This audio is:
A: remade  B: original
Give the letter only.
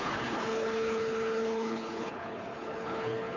A